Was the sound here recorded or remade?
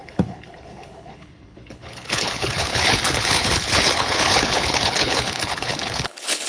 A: remade